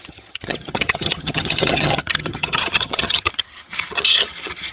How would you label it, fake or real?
fake